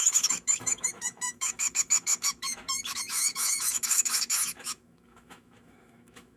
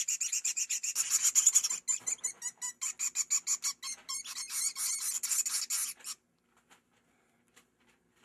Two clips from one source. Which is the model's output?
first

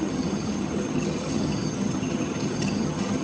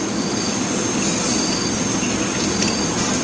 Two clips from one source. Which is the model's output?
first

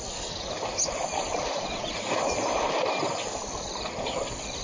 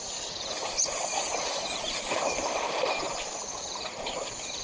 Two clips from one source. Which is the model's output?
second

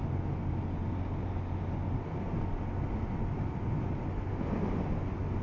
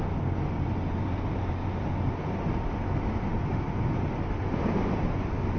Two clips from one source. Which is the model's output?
second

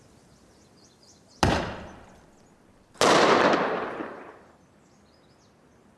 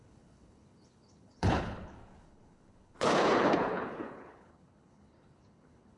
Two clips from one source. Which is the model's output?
second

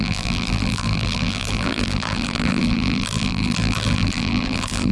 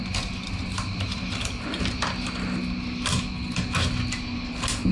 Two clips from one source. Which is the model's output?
first